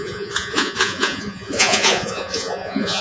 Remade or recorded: remade